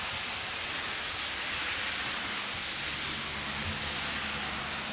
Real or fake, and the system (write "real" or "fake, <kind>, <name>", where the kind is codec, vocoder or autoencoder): real